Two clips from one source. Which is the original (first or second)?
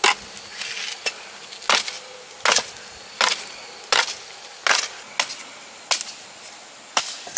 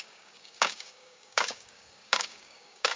first